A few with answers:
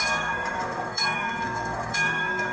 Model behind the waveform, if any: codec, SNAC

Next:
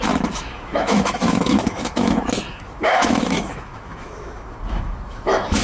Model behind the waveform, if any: autoencoder, DAC-VAE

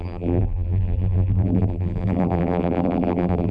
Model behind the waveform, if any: vocoder, BigVGAN v2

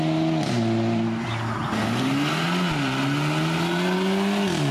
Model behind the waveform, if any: none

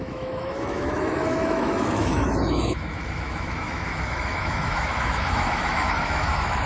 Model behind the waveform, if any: autoencoder, DAC-VAE